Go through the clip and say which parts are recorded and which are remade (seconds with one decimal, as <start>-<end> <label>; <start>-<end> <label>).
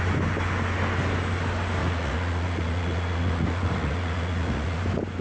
0.0-1.8 recorded; 1.8-4.8 remade; 4.8-5.2 recorded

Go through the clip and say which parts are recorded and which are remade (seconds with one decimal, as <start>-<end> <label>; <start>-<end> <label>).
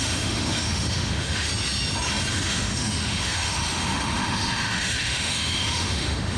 0.0-1.5 remade; 1.5-2.3 recorded; 2.3-6.4 remade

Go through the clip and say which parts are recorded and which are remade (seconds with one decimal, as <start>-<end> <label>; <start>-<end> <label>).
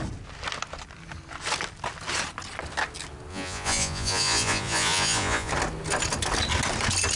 0.0-3.3 recorded; 3.3-5.5 remade; 5.5-7.2 recorded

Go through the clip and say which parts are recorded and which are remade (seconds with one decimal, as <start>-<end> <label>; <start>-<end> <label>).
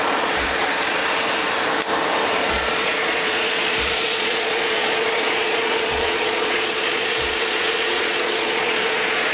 0.0-1.0 remade; 1.0-2.5 recorded; 2.5-9.3 remade